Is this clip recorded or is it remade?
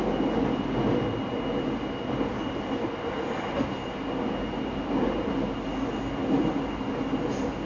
recorded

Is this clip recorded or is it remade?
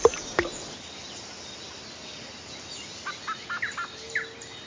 recorded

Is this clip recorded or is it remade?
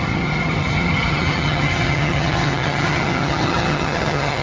remade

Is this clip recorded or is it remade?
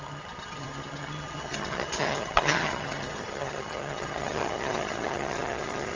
remade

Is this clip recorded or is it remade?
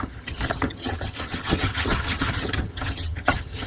remade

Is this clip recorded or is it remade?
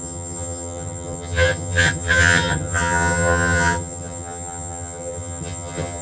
remade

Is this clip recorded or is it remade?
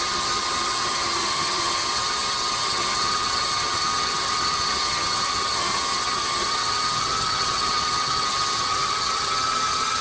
remade